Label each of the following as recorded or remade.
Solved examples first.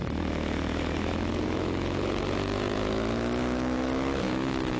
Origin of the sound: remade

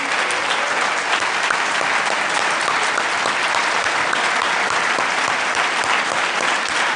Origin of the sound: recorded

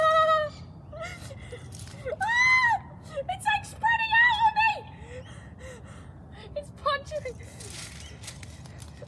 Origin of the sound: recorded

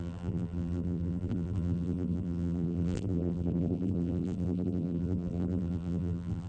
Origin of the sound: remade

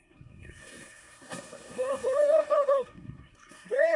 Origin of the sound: remade